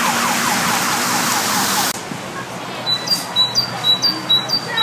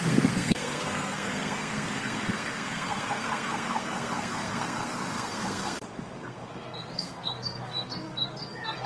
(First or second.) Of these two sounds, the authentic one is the first